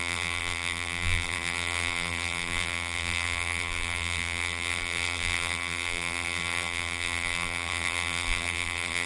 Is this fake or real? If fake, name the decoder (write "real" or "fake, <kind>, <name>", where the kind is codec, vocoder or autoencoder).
fake, vocoder, BigVGAN v2